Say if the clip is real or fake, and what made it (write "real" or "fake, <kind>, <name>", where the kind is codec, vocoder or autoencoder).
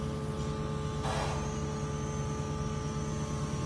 real